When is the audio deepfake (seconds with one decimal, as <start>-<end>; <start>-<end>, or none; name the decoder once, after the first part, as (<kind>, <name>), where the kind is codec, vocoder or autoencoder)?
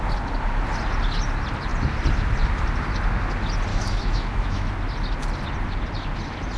3.7-4.7 (autoencoder, DAC-VAE)